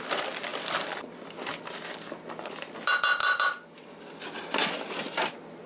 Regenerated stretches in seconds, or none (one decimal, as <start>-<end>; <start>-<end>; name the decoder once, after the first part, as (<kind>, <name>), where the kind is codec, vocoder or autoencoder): 0.5-1.4 (vocoder, BigVGAN v2); 3.2-5.3